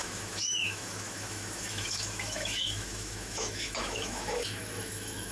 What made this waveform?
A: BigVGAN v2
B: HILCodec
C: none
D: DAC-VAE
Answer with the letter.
D